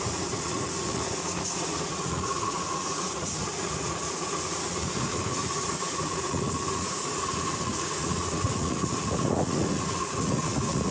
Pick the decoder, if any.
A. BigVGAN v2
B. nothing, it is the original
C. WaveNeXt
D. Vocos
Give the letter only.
D